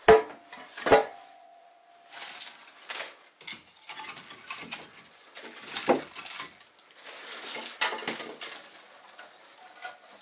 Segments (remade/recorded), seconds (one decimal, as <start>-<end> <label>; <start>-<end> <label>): 0.0-1.0 recorded; 1.0-1.9 remade; 1.9-4.6 recorded; 4.6-5.3 remade; 5.3-10.2 recorded